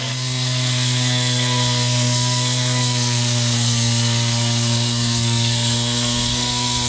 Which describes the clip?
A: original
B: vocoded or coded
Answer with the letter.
B